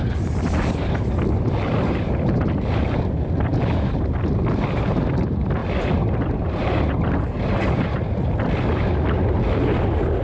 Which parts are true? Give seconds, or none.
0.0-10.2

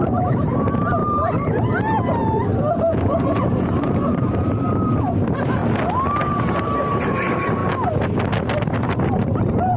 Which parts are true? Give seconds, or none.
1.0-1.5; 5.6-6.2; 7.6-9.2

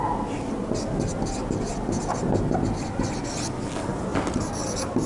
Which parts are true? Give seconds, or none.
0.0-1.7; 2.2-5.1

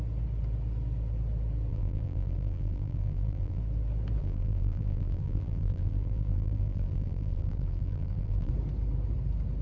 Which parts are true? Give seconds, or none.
0.0-1.7; 3.6-4.2; 8.5-9.6

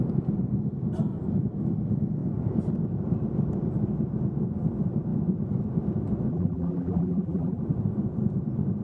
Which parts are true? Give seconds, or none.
0.0-6.3; 7.6-8.8

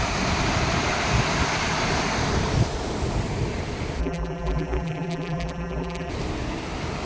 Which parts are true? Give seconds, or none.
0.0-4.0; 6.1-7.1

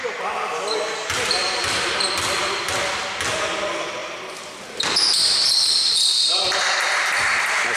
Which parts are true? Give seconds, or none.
0.0-4.0; 6.6-7.8